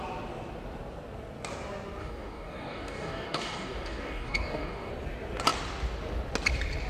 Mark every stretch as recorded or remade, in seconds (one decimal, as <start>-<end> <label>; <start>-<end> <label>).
0.0-2.0 recorded; 2.0-4.9 remade; 4.9-6.9 recorded